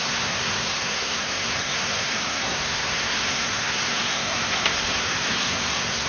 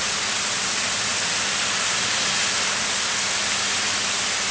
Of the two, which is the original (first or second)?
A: second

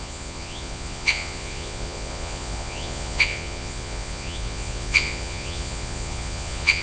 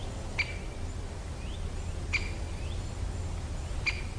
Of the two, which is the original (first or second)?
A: second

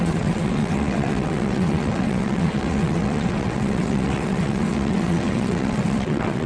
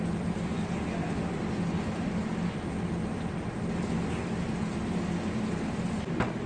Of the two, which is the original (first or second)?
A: second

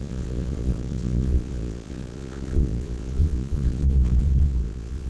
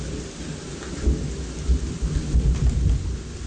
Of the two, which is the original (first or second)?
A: second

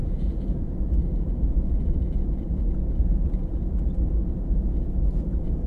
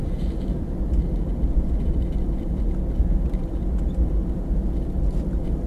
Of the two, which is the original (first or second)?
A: second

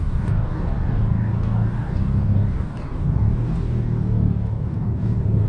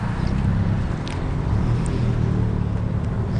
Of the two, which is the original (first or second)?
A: second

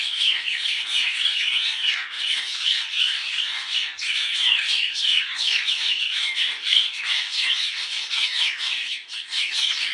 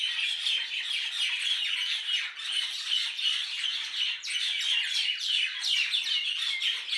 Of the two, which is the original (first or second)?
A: second